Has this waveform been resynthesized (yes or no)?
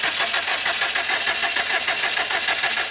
no